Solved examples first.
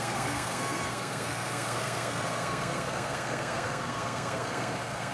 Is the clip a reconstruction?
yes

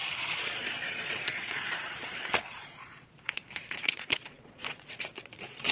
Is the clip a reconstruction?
yes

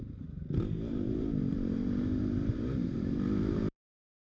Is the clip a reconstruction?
yes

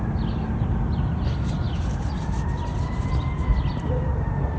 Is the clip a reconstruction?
no